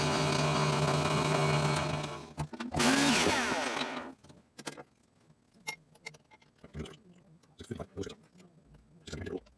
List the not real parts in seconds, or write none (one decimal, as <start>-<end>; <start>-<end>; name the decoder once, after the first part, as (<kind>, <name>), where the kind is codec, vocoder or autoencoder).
none